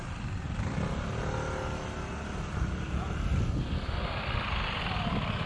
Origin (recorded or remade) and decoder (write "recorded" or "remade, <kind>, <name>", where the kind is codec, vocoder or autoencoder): recorded